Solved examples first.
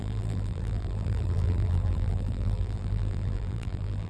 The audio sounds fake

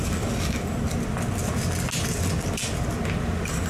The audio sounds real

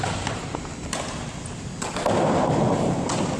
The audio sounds real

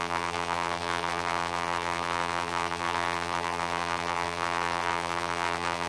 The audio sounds fake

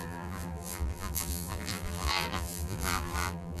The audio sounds fake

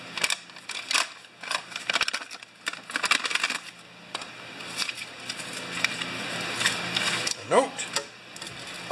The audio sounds real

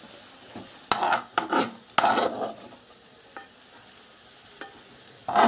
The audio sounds real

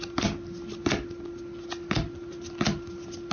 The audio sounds real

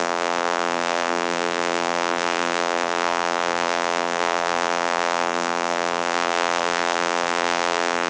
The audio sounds fake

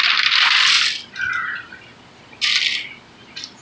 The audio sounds real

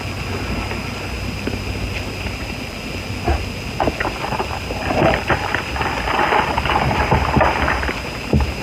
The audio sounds real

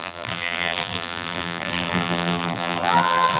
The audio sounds fake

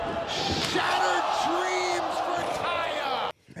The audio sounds real